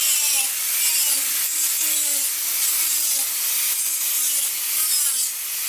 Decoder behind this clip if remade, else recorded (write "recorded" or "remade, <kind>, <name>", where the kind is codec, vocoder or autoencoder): recorded